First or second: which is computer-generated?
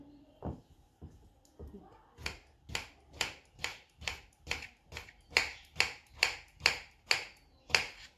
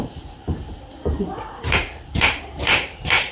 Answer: second